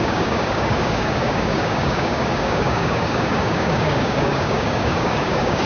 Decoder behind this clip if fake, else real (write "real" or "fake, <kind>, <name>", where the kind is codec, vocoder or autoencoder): fake, codec, DAC